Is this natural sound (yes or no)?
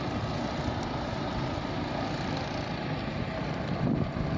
yes